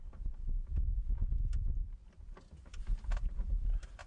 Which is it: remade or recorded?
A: recorded